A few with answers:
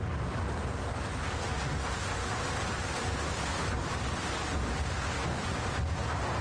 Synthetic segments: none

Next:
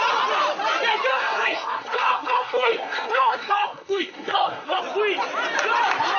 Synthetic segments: 1.1-4.8 (codec, SNAC)

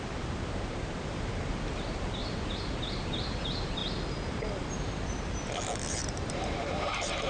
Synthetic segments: 0.0-3.8 (vocoder, BigVGAN v2); 5.9-7.3

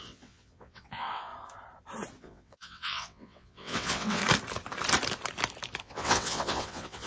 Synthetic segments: 0.0-1.3 (vocoder, WaveNeXt); 2.2-4.2; 5.8-7.1

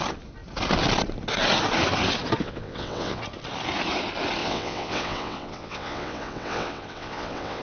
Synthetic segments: 2.4-3.2 (vocoder, WaveNeXt); 4.4-7.6